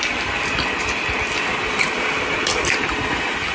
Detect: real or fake real